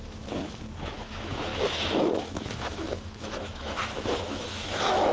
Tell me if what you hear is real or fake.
fake